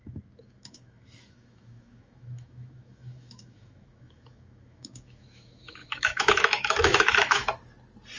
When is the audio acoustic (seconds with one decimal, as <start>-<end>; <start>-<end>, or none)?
7.4-8.2